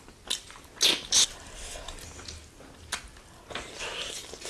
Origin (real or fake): real